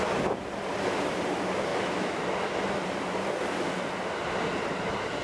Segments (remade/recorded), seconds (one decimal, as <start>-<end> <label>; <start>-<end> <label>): 0.0-1.7 recorded; 1.7-2.2 remade; 2.2-5.2 recorded